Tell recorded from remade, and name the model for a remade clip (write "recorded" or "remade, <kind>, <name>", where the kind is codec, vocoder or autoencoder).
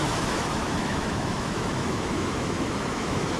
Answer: remade, autoencoder, DAC-VAE